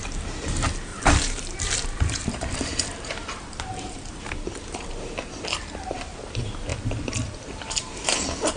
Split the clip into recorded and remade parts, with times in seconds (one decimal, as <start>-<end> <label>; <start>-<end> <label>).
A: 0.0-0.9 recorded; 0.9-4.3 remade; 4.3-6.7 recorded; 6.7-8.6 remade